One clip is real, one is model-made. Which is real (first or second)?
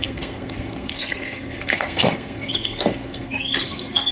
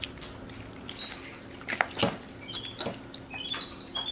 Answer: second